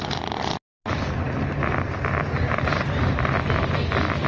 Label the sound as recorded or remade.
recorded